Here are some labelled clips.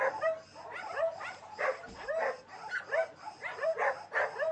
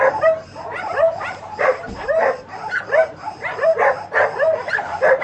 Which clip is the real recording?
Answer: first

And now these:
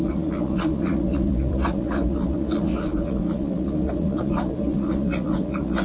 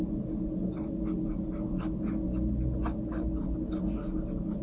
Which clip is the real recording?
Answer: second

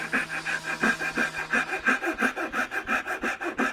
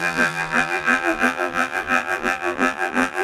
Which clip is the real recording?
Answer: first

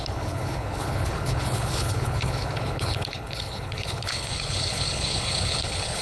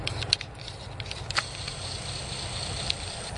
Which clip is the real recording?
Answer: second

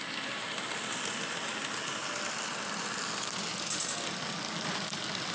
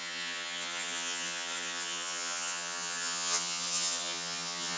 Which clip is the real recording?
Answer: first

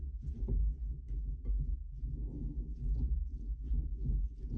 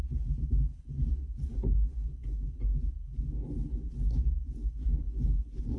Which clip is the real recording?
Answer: first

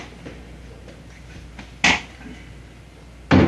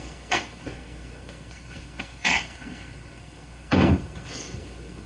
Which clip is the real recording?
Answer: first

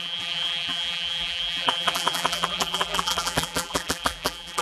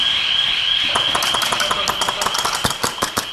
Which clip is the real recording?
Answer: second